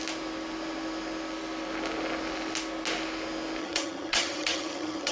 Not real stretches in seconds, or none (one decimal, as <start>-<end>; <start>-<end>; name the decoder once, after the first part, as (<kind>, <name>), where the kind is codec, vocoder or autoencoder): 3.6-5.1 (vocoder, HiFi-GAN)